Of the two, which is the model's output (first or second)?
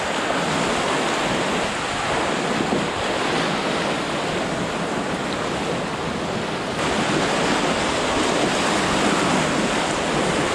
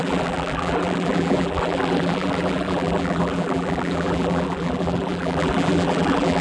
second